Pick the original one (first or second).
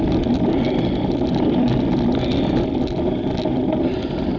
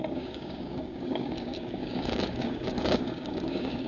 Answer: first